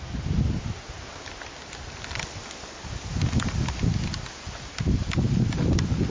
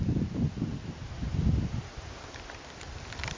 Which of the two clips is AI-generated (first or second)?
second